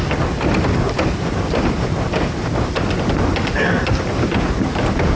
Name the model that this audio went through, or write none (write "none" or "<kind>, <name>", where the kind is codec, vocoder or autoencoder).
none